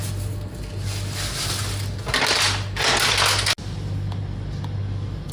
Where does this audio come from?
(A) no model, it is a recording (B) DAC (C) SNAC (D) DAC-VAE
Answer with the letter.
A